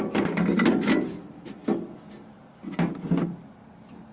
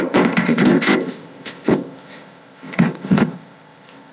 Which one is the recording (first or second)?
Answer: first